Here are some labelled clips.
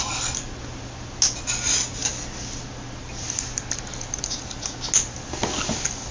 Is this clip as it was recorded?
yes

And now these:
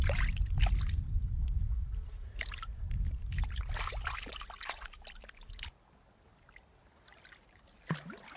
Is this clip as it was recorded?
yes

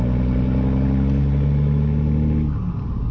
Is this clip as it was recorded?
yes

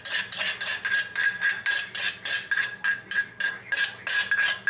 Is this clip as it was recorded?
yes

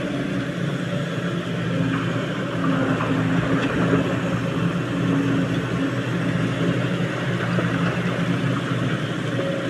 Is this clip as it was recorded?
yes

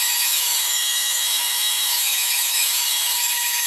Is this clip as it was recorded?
no